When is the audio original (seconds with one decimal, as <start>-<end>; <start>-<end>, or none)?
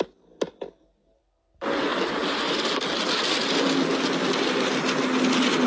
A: 0.0-5.7